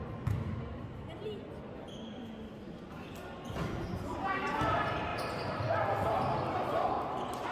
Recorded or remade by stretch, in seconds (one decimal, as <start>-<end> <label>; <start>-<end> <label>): 0.0-5.1 recorded; 5.1-5.6 remade; 5.6-7.5 recorded

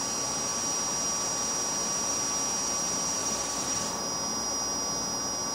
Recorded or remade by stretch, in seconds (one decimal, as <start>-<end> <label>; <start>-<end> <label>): 0.0-3.2 recorded; 3.2-4.0 remade; 4.0-5.5 recorded

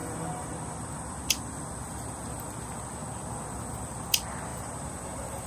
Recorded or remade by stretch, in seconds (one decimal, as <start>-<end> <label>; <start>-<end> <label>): 0.0-1.2 remade; 1.2-4.5 recorded; 4.5-5.5 remade

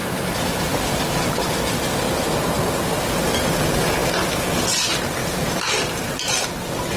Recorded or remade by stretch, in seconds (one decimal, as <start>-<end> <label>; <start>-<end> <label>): 0.0-5.2 recorded; 5.2-6.5 remade; 6.5-7.0 recorded

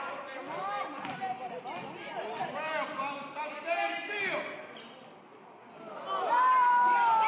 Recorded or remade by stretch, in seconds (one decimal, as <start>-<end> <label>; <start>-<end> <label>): 0.0-7.3 recorded

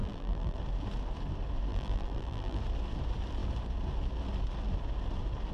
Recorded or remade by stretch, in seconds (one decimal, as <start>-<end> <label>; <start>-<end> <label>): 0.0-0.6 remade; 0.6-1.7 recorded; 1.7-2.6 remade; 2.6-5.5 recorded

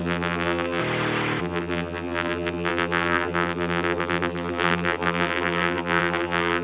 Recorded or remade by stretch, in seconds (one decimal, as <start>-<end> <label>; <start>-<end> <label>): 0.0-0.8 remade; 0.8-1.4 recorded; 1.4-6.6 remade